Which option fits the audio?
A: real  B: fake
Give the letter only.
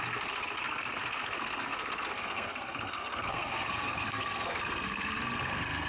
B